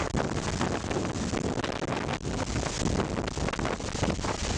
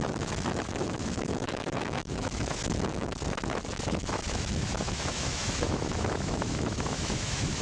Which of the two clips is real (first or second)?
first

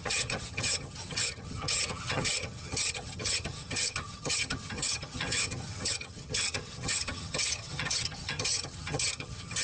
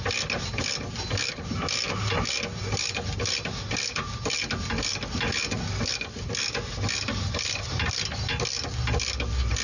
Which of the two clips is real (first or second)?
second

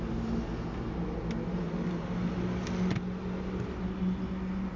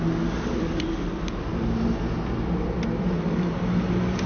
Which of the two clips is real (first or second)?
first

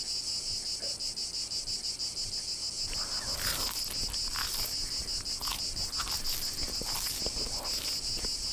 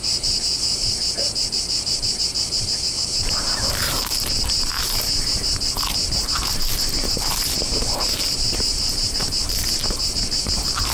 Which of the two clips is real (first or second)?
first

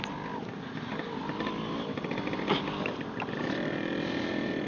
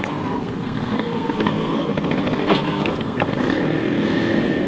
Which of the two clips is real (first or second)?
first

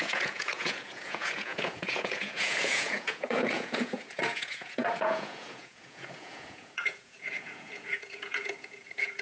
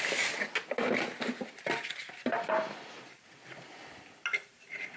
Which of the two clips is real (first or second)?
second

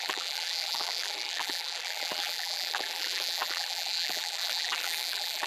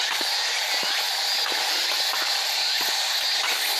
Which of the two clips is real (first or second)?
second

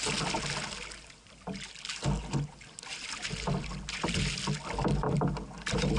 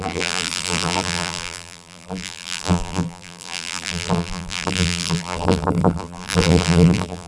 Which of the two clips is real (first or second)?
first